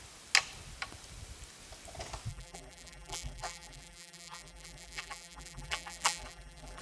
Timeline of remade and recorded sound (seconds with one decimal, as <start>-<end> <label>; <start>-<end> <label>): 0.0-2.3 recorded; 2.3-6.8 remade